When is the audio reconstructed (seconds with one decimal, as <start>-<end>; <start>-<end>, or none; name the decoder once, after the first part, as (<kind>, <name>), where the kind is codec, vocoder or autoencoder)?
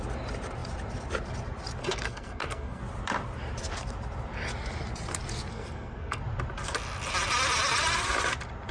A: 1.8-2.8 (codec, SNAC); 5.5-6.2